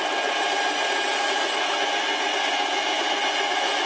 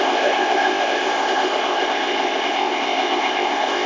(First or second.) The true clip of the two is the first